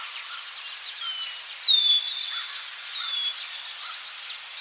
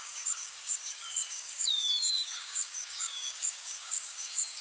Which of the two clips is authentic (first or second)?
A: first